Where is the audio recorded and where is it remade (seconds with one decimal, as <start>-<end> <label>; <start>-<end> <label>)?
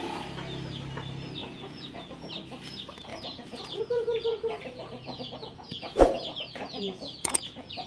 0.0-1.4 recorded; 1.4-2.3 remade; 2.3-3.1 recorded; 3.1-7.9 remade